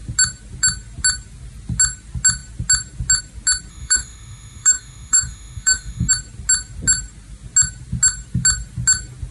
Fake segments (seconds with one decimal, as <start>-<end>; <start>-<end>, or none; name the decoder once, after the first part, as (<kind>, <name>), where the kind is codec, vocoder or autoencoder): 3.7-6.1 (autoencoder, DAC-VAE)